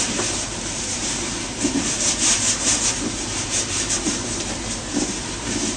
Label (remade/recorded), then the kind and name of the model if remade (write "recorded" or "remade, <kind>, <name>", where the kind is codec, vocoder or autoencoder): remade, vocoder, BigVGAN v2